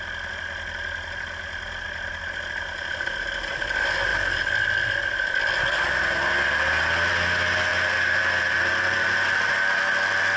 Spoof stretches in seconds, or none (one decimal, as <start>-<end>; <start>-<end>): 7.7-8.7